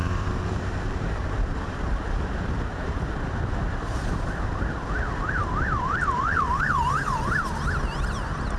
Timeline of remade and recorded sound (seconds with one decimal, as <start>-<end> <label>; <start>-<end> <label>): 0.0-4.3 remade; 4.3-5.4 recorded; 5.4-6.4 remade; 6.4-8.6 recorded